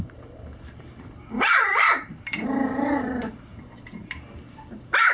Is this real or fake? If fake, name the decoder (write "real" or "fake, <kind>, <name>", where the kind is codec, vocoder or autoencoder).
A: fake, vocoder, BigVGAN v2